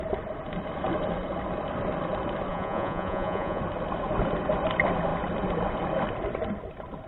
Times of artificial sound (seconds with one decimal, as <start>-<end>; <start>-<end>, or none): 2.5-3.6